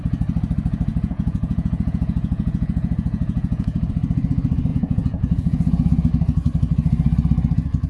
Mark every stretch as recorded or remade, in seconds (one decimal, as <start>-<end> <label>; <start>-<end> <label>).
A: 0.0-0.9 recorded; 0.9-3.9 remade; 3.9-4.7 recorded; 4.7-6.1 remade; 6.1-7.9 recorded